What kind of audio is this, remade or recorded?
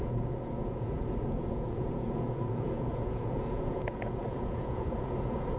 remade